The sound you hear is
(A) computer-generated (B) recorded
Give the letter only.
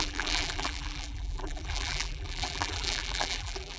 A